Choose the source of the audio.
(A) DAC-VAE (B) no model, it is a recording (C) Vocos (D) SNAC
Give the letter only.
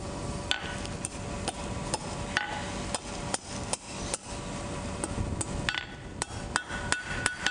B